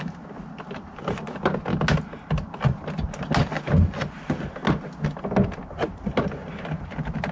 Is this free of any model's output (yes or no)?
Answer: yes